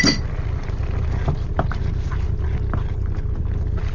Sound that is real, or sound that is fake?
real